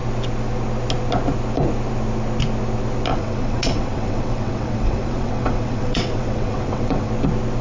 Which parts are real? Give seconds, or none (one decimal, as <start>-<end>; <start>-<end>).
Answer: 0.0-3.1; 7.1-7.6